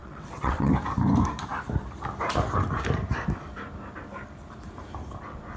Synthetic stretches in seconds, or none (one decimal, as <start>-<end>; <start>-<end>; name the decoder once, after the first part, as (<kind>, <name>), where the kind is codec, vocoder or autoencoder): 0.0-0.7 (vocoder, WaveNeXt)

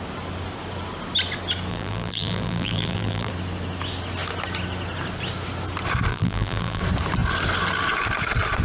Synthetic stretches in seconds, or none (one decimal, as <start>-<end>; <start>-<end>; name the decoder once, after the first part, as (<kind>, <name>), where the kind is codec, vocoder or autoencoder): 1.7-3.3 (vocoder, BigVGAN v2); 6.1-6.8